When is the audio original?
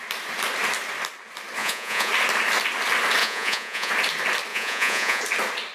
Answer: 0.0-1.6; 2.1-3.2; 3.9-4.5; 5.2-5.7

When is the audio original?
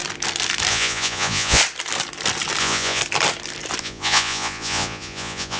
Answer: 0.0-0.7; 1.6-2.6; 3.0-3.8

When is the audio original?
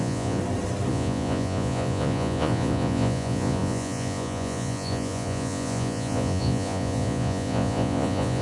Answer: 0.4-0.9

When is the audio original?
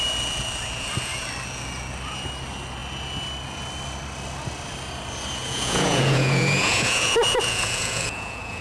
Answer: 0.0-5.4